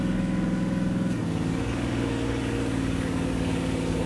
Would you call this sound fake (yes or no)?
yes